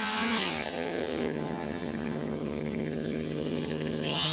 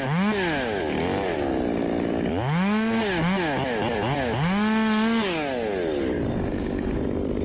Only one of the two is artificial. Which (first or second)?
first